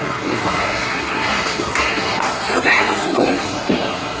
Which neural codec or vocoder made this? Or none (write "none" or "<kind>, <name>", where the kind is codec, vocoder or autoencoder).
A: codec, SNAC